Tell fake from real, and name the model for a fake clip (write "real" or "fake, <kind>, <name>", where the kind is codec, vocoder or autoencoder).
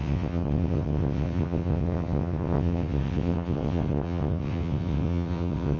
fake, vocoder, WaveNeXt